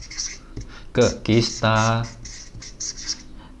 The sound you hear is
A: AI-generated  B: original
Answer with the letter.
B